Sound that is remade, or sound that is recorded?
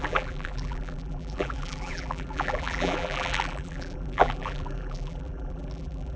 remade